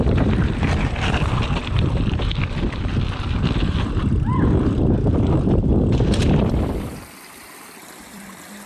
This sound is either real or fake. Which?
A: fake